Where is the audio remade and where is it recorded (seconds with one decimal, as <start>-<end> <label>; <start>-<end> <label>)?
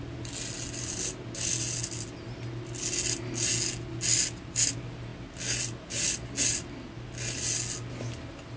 0.0-8.6 recorded